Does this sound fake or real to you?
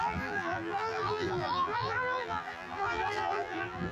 fake